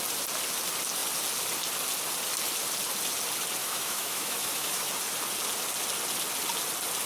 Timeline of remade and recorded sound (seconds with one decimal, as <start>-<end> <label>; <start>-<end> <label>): 0.0-3.6 recorded; 3.6-4.9 remade; 4.9-7.1 recorded